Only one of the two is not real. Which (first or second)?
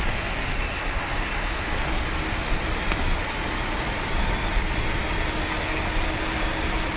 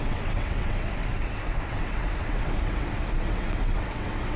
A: second